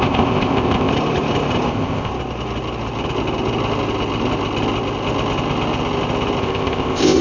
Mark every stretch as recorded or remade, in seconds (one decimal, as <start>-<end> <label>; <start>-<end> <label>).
0.0-0.9 remade; 0.9-1.7 recorded; 1.7-2.1 remade; 2.1-6.4 recorded; 6.4-7.2 remade